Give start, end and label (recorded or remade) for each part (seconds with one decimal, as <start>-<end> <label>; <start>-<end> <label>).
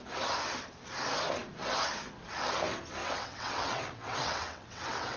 0.0-3.0 recorded; 3.0-5.2 remade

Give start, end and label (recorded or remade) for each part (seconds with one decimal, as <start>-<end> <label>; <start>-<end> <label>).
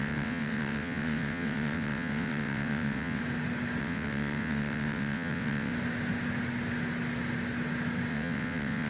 0.0-3.2 remade; 3.2-3.8 recorded; 3.8-5.7 remade; 5.7-8.1 recorded; 8.1-8.9 remade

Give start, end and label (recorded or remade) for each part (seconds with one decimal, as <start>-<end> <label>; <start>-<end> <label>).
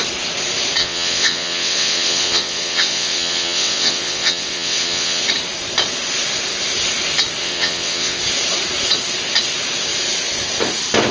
0.0-0.8 recorded; 0.8-5.2 remade; 5.2-7.4 recorded; 7.4-8.2 remade; 8.2-11.1 recorded